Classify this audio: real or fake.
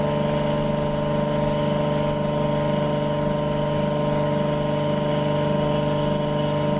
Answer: real